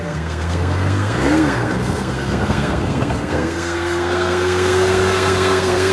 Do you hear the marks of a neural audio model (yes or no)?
yes